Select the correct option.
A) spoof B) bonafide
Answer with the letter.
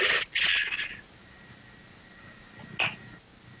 B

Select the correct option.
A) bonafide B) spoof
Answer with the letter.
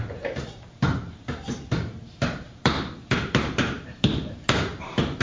B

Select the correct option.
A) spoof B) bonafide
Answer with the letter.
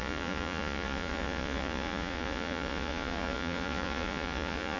A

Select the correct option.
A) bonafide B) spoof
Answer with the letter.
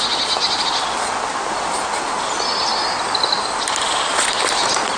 A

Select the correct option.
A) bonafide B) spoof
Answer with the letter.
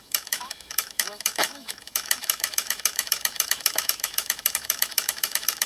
B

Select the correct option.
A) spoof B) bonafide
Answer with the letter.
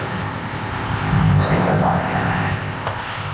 A